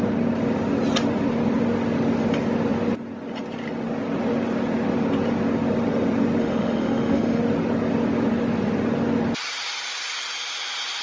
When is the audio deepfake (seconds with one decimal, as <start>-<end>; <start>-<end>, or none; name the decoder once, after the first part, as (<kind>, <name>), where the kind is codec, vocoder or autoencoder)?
6.4-7.4 (autoencoder, DAC-VAE)